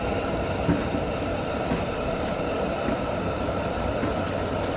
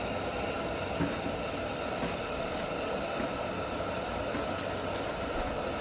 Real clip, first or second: second